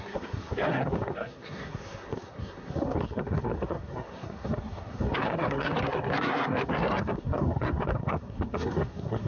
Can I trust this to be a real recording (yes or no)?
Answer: no